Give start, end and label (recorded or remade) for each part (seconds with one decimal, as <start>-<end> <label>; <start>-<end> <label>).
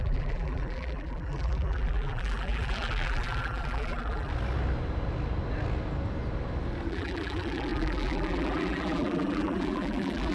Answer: 0.0-4.3 remade; 4.3-6.9 recorded; 6.9-10.3 remade